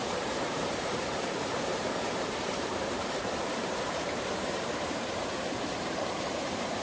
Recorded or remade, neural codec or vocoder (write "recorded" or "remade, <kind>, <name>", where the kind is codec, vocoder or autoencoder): remade, vocoder, BigVGAN v2